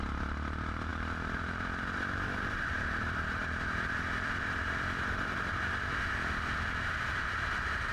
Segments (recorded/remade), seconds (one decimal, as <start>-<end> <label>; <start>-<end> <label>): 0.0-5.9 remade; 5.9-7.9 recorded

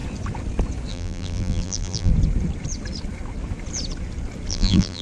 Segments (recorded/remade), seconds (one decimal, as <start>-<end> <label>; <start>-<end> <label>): 0.0-0.9 recorded; 0.9-2.1 remade; 2.1-4.5 recorded; 4.5-5.0 remade

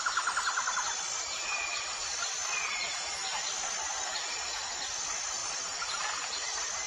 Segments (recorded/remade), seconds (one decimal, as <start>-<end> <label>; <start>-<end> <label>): 0.0-1.7 recorded; 1.7-2.4 remade; 2.4-5.4 recorded; 5.4-6.9 remade

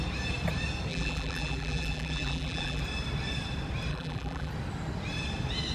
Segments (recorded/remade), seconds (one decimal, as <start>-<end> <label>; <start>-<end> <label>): 0.0-0.9 recorded; 0.9-2.8 remade; 2.8-3.9 recorded; 3.9-4.5 remade; 4.5-5.7 recorded